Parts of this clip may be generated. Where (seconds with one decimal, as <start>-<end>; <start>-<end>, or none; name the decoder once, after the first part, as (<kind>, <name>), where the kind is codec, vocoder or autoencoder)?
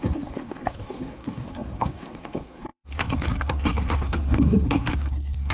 0.0-5.5 (codec, SNAC)